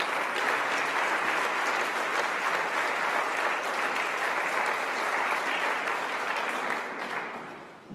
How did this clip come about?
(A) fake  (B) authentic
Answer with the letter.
B